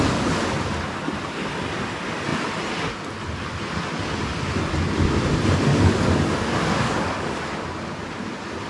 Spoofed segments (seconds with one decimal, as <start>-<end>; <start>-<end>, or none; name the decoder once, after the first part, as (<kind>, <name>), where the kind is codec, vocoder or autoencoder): 5.7-7.4 (codec, DAC)